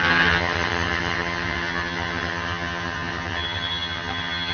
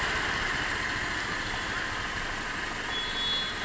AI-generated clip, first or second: first